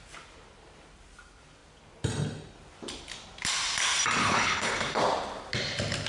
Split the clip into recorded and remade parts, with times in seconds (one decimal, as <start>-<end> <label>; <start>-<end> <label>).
0.0-4.2 recorded; 4.2-5.0 remade; 5.0-6.1 recorded